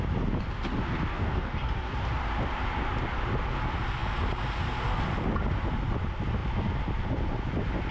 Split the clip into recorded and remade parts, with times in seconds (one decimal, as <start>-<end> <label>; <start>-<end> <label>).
0.0-1.1 recorded; 1.1-1.9 remade; 1.9-7.9 recorded